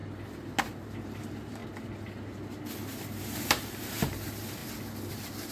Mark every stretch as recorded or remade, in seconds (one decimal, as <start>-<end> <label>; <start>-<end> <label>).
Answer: 0.0-0.6 recorded; 0.6-1.6 remade; 1.6-2.9 recorded; 2.9-4.6 remade; 4.6-5.1 recorded; 5.1-5.5 remade